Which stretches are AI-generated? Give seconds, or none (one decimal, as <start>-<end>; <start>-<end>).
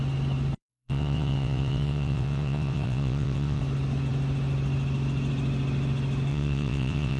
0.7-3.6; 6.3-7.2